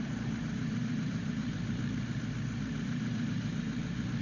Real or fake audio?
fake